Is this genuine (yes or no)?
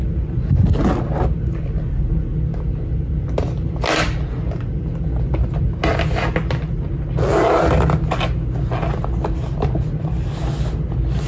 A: yes